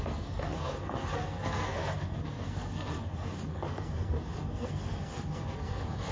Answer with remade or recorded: remade